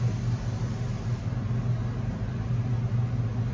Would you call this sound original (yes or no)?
yes